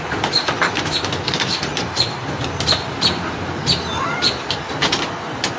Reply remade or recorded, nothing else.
remade